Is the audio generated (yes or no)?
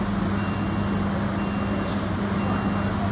no